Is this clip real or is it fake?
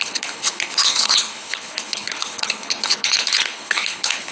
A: fake